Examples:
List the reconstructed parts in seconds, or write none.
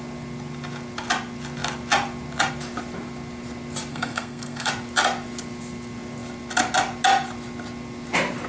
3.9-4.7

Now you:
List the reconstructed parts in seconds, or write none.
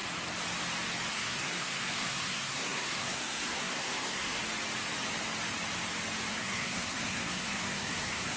1.1-4.4; 6.3-8.4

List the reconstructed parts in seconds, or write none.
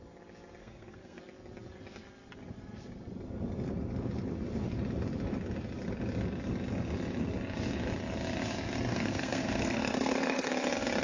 0.6-1.2; 8.9-10.5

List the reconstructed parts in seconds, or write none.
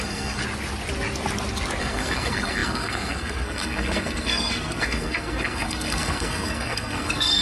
0.0-0.4; 1.8-7.4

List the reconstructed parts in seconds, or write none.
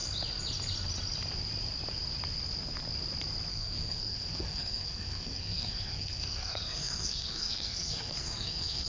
3.5-8.9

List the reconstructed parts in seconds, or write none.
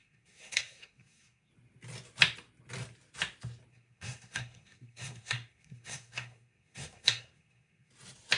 0.0-1.5; 3.7-7.9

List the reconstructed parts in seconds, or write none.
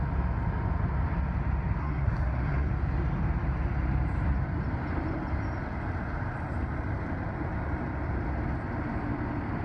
1.8-2.7